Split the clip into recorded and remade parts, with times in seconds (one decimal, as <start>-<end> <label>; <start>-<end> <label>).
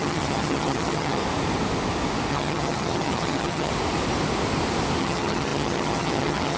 0.0-1.2 remade; 1.2-2.3 recorded; 2.3-3.7 remade; 3.7-5.0 recorded; 5.0-6.6 remade